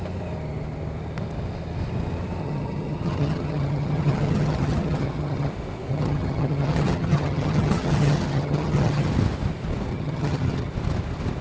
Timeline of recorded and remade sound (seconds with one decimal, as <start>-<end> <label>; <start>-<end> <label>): 0.0-2.4 recorded; 2.4-5.5 remade; 5.5-5.9 recorded; 5.9-9.1 remade; 9.1-9.9 recorded; 9.9-10.7 remade; 10.7-11.4 recorded